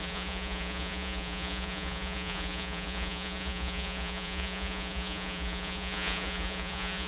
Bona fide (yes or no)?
no